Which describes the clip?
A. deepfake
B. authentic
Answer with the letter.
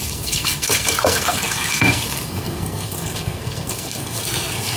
A